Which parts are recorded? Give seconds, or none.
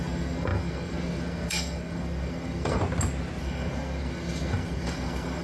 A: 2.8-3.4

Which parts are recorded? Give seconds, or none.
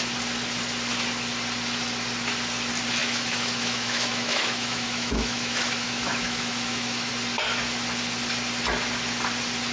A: 0.0-3.0; 7.1-9.7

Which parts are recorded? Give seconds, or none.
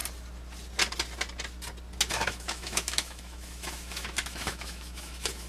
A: 0.0-2.1